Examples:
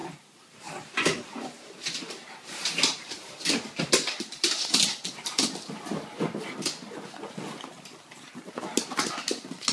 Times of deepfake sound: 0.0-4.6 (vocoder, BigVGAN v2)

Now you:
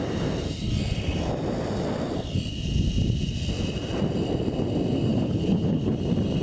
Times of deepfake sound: 5.1-5.9 (codec, HILCodec)

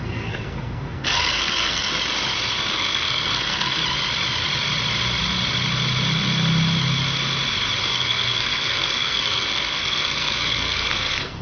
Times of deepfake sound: 0.0-1.9 (codec, SNAC); 2.7-3.8; 7.8-11.4

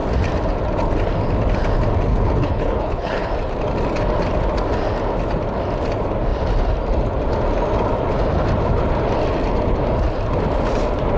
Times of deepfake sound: 2.1-3.3 (codec, HILCodec)

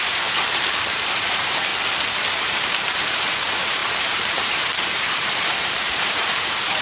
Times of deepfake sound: 0.0-1.7 (vocoder, BigVGAN v2); 2.3-6.8

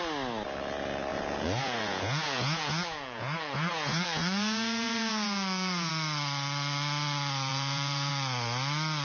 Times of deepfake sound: 1.1-5.9 (vocoder, Vocos); 7.5-8.1

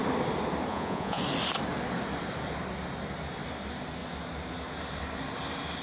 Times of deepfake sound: 0.7-1.2 (vocoder, Vocos)

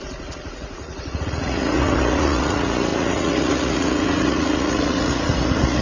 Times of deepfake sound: 0.0-5.8 (vocoder, Vocos)